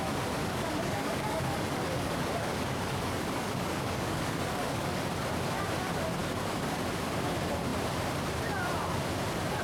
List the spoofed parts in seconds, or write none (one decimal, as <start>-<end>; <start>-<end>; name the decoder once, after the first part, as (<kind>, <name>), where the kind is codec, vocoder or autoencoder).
0.4-5.0 (codec, DAC); 6.2-7.0